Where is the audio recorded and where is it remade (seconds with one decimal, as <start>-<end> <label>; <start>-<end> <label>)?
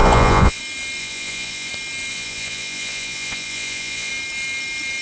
0.0-0.6 remade; 0.6-1.0 recorded; 1.0-1.7 remade; 1.7-2.1 recorded; 2.1-4.1 remade; 4.1-5.0 recorded